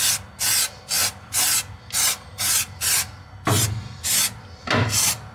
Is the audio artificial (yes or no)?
no